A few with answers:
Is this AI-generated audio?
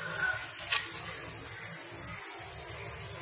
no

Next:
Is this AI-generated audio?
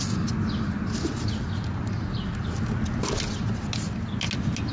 no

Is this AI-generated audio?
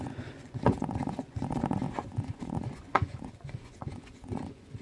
yes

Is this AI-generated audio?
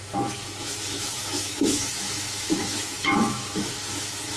yes